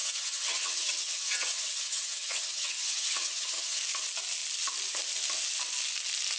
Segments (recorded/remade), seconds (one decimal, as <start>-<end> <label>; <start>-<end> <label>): 0.0-3.8 remade; 3.8-6.4 recorded